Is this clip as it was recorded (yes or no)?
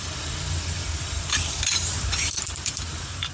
no